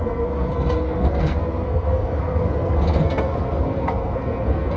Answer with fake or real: fake